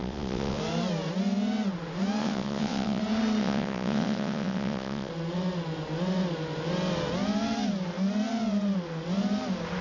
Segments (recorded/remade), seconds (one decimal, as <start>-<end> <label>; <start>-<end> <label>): 0.0-0.6 remade; 0.6-2.2 recorded; 2.2-3.0 remade; 3.0-3.4 recorded; 3.4-5.1 remade; 5.1-9.8 recorded